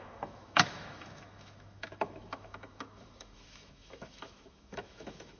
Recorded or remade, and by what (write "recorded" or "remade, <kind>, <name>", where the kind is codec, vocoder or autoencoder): remade, autoencoder, DAC-VAE